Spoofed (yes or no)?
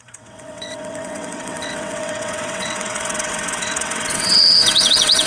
yes